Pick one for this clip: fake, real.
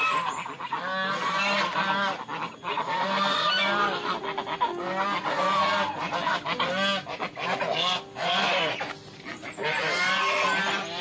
real